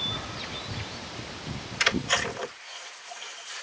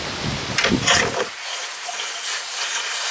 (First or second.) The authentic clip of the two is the second